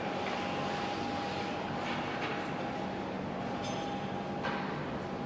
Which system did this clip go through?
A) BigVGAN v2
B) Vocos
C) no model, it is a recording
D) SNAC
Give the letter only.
C